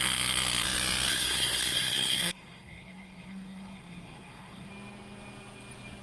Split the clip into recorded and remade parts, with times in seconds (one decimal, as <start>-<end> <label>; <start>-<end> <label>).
0.0-1.1 recorded; 1.1-4.7 remade; 4.7-6.0 recorded